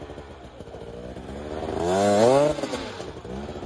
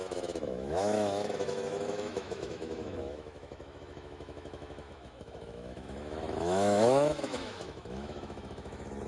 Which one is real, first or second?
first